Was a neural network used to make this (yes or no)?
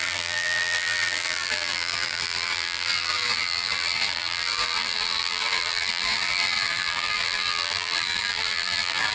yes